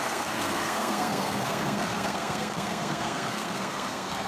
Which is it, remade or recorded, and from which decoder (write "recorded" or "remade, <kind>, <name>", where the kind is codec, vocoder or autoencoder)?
remade, codec, SNAC